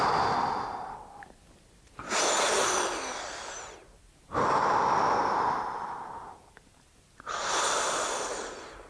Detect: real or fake real